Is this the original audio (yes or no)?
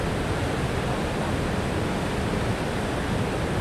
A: no